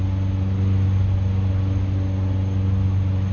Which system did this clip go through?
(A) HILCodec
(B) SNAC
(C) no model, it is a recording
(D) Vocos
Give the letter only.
C